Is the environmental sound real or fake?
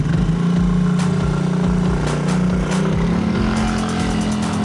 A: real